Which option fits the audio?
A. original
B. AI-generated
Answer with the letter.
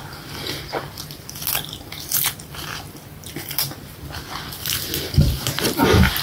A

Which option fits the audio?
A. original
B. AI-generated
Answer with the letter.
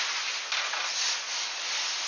A